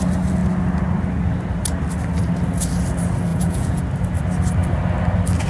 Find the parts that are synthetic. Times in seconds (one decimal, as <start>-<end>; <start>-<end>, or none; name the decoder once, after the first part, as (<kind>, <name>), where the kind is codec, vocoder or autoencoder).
3.3-3.8 (vocoder, Vocos)